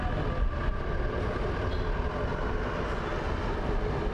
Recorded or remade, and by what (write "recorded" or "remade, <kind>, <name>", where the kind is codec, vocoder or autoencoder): recorded